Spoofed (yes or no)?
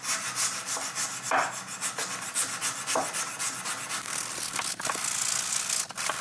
no